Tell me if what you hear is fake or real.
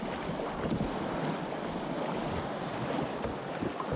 real